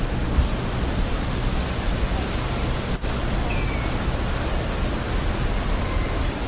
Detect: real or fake real